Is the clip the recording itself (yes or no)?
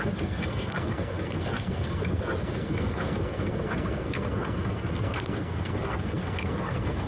no